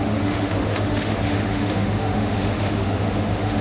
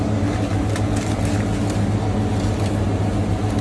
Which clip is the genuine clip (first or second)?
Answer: second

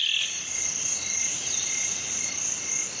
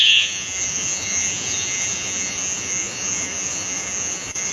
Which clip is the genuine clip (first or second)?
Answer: first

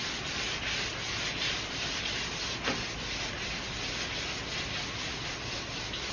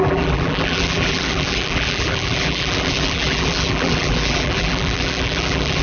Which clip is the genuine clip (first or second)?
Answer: first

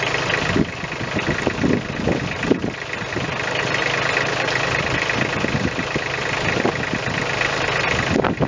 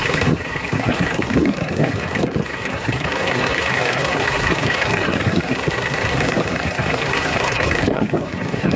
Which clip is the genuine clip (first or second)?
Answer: first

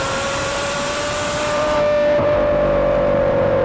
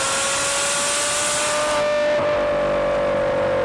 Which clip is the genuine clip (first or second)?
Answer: second